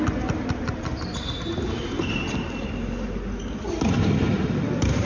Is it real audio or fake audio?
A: real